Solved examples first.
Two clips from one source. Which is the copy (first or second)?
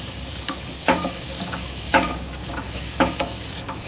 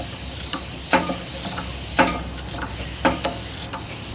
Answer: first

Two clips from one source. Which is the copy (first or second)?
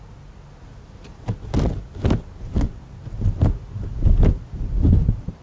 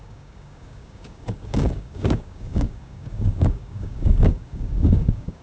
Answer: second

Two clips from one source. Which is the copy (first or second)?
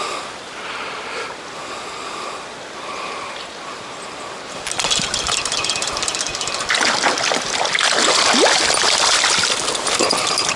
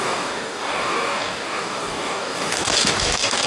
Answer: second